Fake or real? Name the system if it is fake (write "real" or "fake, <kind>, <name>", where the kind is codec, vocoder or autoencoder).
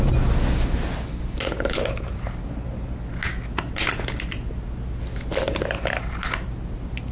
real